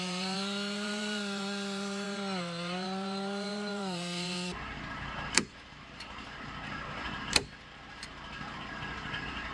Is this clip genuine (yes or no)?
no